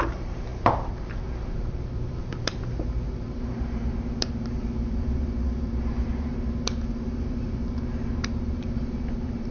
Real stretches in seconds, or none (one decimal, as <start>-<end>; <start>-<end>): none